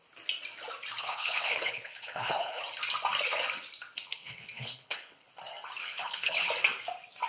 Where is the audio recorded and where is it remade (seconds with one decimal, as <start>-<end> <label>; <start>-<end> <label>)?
0.0-1.0 recorded; 1.0-2.6 remade; 2.6-4.1 recorded; 4.1-5.3 remade; 5.3-5.8 recorded; 5.8-6.5 remade; 6.5-7.3 recorded

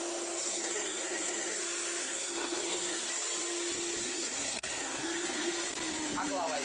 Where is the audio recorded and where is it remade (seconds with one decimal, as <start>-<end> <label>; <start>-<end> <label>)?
0.0-0.4 recorded; 0.4-1.6 remade; 1.6-2.0 recorded; 2.0-3.1 remade; 3.1-4.0 recorded; 4.0-5.5 remade; 5.5-6.6 recorded